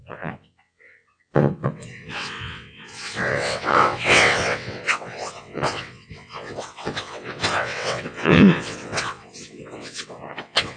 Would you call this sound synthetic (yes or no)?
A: yes